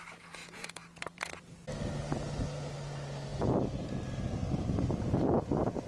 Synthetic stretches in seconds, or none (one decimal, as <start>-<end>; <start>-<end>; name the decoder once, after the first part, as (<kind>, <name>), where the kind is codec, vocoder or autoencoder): 0.4-1.4 (vocoder, Vocos)